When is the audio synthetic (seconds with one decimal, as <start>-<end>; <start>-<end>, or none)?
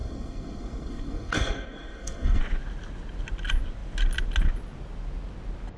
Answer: 0.0-2.4